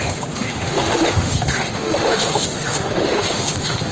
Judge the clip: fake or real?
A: fake